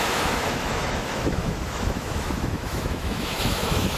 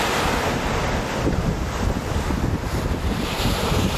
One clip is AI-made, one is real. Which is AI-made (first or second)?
first